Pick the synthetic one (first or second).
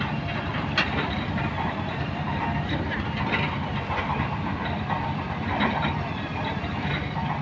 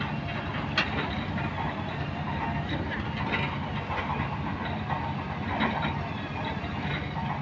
first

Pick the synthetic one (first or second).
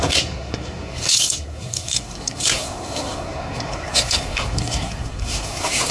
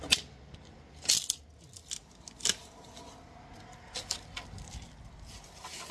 first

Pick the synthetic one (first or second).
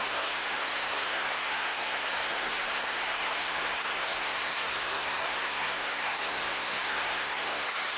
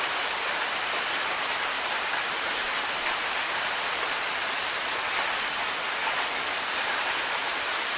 first